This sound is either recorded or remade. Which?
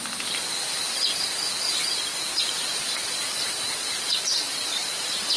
recorded